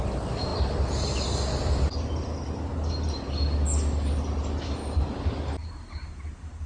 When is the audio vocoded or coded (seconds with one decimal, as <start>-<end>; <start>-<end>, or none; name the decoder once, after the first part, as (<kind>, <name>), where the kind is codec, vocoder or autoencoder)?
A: none